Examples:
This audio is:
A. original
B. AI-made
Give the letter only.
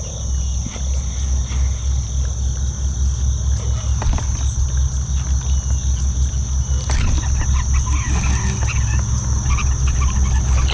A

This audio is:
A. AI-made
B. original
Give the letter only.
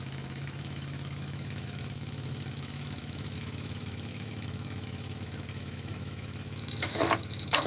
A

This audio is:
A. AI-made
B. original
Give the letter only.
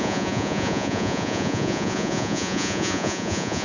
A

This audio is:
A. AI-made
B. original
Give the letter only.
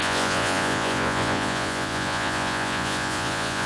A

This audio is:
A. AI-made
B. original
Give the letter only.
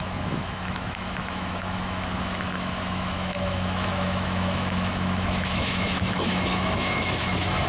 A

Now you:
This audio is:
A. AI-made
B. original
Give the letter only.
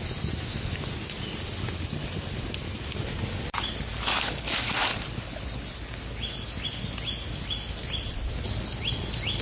B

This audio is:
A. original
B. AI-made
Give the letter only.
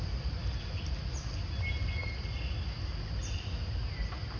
A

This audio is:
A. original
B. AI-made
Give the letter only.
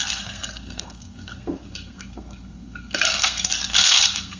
B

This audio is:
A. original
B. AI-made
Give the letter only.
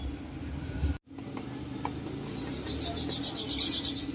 A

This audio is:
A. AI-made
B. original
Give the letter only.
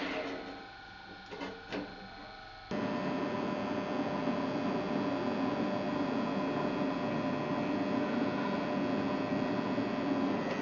B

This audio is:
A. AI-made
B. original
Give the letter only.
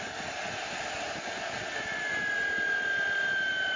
B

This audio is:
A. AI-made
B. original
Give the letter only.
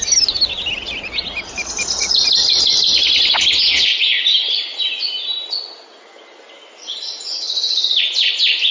B